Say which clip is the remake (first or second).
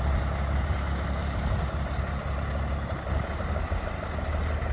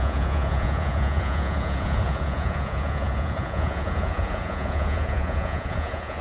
second